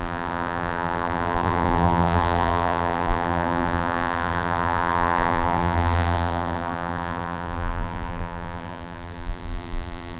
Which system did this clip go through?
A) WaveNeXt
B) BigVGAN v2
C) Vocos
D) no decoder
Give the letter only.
B